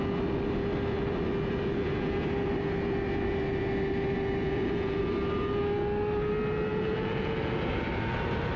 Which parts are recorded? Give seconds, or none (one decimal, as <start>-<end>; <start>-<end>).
0.0-4.4; 5.0-6.7; 7.4-8.6